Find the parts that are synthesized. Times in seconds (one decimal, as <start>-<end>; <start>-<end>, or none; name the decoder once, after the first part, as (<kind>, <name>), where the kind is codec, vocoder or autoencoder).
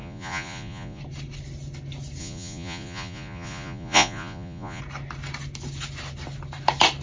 0.0-1.0 (vocoder, Vocos); 2.2-4.8